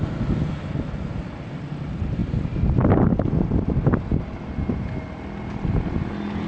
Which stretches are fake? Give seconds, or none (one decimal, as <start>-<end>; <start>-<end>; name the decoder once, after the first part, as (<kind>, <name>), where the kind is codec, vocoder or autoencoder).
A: none